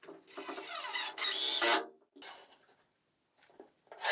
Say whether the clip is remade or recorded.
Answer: recorded